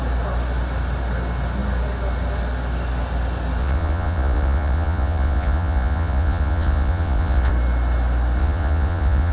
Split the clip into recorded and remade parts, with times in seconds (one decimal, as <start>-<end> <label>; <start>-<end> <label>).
0.0-3.6 recorded; 3.6-7.5 remade; 7.5-8.4 recorded; 8.4-9.3 remade